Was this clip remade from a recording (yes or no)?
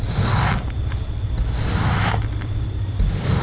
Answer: no